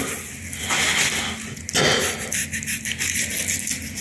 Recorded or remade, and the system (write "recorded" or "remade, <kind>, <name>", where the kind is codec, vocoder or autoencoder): recorded